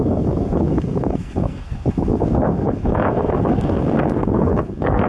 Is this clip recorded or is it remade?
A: remade